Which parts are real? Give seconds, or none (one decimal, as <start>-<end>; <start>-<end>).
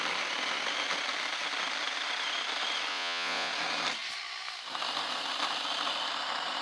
0.0-2.9; 3.5-6.6